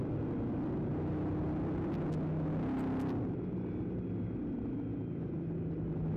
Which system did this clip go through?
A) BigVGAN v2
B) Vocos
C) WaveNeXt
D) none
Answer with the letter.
D